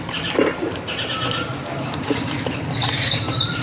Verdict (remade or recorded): remade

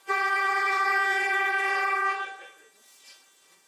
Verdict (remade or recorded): remade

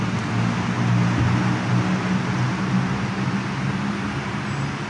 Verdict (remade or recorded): recorded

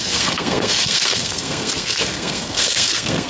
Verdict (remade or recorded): remade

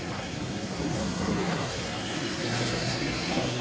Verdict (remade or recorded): remade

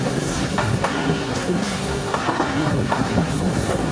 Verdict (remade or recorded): remade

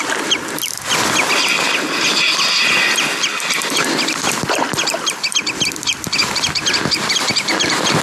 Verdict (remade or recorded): recorded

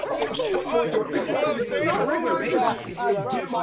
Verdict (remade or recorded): recorded